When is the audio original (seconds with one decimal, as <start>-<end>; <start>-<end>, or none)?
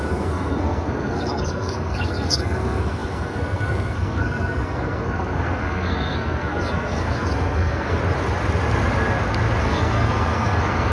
8.0-9.6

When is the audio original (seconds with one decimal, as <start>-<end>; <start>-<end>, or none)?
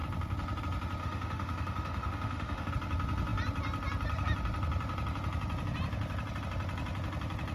0.0-1.0; 2.7-7.5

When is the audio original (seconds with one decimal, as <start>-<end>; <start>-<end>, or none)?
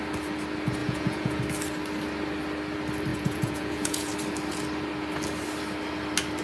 0.0-0.8; 1.4-3.1; 4.1-6.4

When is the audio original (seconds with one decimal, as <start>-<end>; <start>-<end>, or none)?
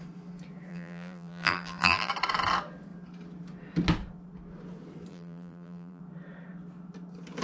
0.0-0.7; 2.1-5.1; 6.0-7.4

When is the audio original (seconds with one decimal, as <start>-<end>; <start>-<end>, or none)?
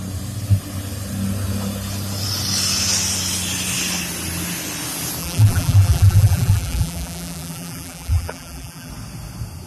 0.0-5.2; 8.9-9.7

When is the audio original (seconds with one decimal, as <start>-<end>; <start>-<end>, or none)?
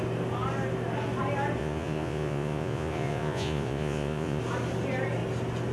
0.0-1.6; 4.4-5.7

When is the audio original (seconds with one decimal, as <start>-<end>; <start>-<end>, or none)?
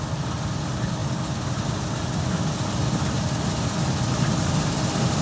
0.0-5.2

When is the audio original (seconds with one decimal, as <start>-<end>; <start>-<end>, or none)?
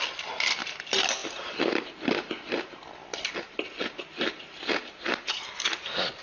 0.0-6.2